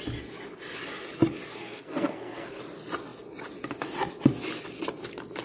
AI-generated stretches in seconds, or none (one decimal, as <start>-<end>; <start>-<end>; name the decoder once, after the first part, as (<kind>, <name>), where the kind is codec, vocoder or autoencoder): 1.6-2.6 (codec, SNAC)